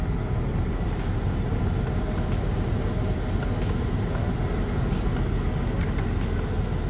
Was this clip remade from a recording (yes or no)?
no